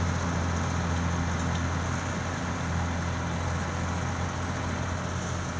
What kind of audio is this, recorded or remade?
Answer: recorded